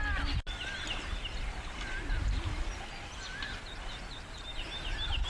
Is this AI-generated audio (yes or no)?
no